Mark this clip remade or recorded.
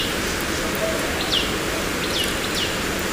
recorded